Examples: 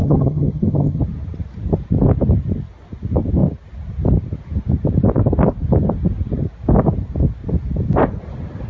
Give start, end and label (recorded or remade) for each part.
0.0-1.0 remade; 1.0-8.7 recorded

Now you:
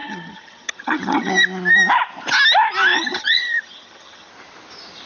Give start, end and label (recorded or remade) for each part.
0.0-1.3 remade; 1.3-2.9 recorded; 2.9-4.3 remade; 4.3-5.1 recorded

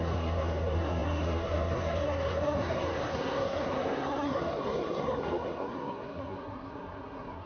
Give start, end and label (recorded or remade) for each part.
0.0-7.5 remade